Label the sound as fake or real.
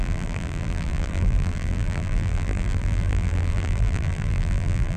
fake